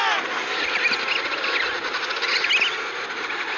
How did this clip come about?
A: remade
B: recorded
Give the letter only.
B